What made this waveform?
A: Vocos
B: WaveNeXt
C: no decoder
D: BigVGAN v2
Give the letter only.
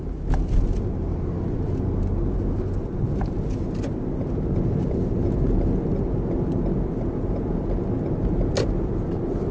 C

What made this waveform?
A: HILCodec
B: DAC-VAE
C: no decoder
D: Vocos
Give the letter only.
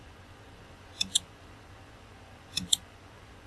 D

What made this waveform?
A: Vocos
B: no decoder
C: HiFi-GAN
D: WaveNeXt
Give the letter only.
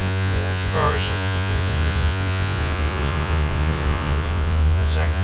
A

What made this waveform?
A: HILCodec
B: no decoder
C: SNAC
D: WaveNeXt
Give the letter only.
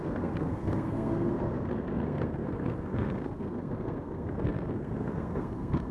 C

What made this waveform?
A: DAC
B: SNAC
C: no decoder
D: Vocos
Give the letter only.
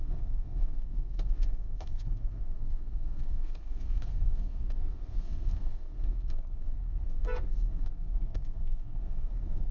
B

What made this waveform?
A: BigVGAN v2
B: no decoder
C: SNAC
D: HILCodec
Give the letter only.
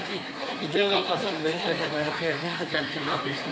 C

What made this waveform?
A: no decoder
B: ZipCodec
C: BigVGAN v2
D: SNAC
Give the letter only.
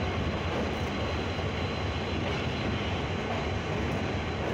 A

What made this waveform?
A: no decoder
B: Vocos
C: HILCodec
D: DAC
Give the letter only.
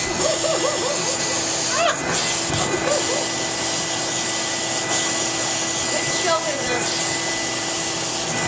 A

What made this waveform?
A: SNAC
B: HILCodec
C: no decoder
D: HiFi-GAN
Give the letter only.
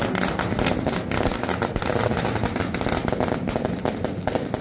C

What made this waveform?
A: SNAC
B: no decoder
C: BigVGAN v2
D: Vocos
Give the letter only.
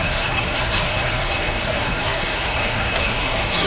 A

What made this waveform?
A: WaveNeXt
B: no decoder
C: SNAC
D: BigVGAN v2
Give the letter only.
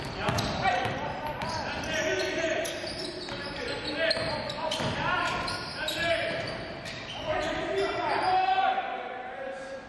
D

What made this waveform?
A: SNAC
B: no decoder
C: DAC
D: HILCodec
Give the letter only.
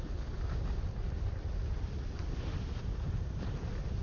B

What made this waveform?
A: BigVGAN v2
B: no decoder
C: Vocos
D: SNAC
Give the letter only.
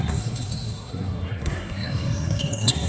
D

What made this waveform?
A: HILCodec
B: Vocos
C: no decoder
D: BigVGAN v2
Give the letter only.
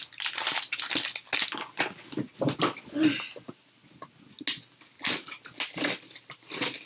C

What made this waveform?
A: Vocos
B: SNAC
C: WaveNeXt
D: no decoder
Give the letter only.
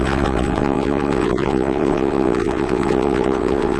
C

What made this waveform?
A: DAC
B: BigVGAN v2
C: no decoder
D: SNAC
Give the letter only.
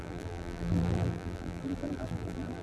B